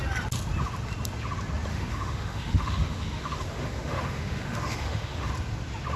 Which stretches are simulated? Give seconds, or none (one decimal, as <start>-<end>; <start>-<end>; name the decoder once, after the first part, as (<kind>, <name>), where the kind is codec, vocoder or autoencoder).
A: 1.7-5.3 (autoencoder, DAC-VAE)